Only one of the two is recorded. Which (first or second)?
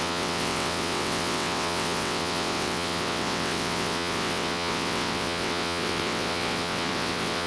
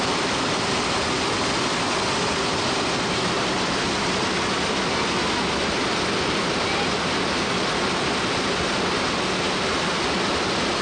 second